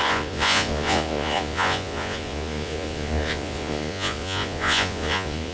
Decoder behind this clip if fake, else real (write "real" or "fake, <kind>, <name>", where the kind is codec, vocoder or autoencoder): fake, vocoder, Vocos